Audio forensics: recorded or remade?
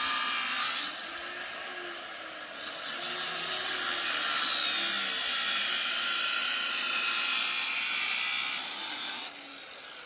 recorded